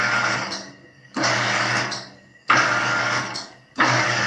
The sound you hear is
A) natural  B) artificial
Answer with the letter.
B